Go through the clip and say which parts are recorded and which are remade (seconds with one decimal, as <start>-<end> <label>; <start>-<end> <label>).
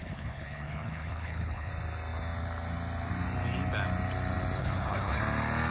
0.0-1.7 remade; 1.7-4.6 recorded; 4.6-5.2 remade; 5.2-5.7 recorded